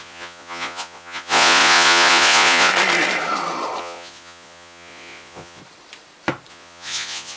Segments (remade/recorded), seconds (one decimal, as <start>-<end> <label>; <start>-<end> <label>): 0.0-2.7 remade; 2.7-3.8 recorded; 3.8-5.6 remade; 5.6-6.5 recorded; 6.5-7.4 remade